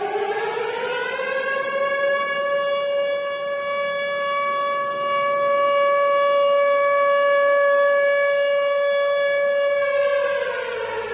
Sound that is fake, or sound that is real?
real